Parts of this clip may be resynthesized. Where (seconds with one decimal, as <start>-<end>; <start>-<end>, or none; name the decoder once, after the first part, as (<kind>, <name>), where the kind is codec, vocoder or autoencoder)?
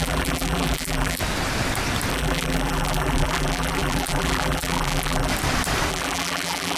0.0-1.2 (vocoder, BigVGAN v2); 2.1-5.3; 5.9-6.8